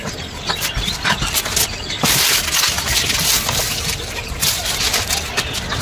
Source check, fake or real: real